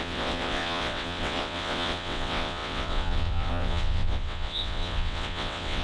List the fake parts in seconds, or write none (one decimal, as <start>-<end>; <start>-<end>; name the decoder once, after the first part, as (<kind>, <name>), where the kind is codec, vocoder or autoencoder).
0.0-5.8 (vocoder, WaveNeXt)